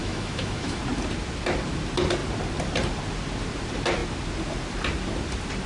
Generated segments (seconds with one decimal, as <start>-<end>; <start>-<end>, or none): 0.0-0.8